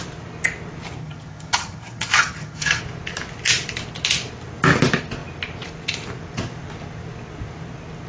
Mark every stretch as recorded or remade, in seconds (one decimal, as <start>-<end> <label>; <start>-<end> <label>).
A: 0.0-1.0 recorded; 1.0-2.8 remade; 2.8-8.1 recorded

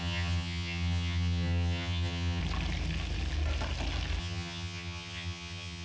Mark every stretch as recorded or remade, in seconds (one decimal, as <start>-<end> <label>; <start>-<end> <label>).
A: 0.0-2.4 remade; 2.4-4.2 recorded; 4.2-5.8 remade

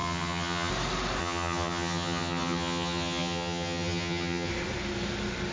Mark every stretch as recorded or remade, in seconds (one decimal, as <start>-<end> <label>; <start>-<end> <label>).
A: 0.0-0.7 remade; 0.7-1.2 recorded; 1.2-4.5 remade; 4.5-5.5 recorded